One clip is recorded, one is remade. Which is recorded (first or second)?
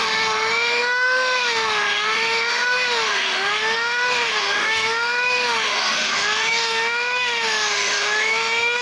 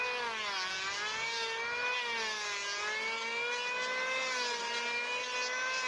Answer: second